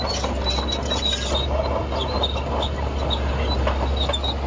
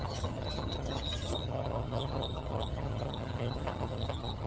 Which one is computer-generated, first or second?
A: second